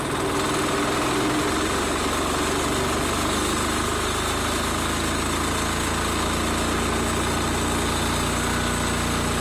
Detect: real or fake real